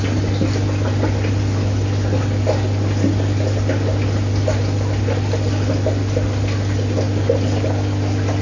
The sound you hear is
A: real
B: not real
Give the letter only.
A